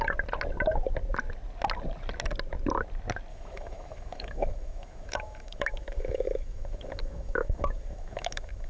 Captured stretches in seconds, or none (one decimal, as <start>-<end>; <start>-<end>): 0.0-3.3